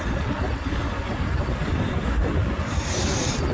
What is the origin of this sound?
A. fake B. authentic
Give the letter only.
B